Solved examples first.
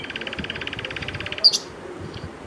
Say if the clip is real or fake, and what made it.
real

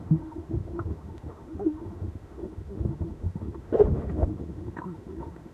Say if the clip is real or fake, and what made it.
fake, autoencoder, DAC-VAE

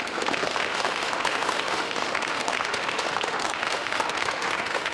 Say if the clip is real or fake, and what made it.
fake, autoencoder, DAC-VAE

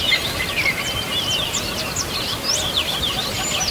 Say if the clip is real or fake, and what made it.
real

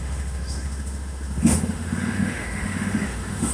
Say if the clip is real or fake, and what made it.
fake, autoencoder, DAC-VAE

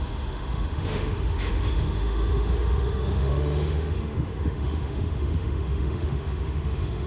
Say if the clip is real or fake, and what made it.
fake, autoencoder, DAC-VAE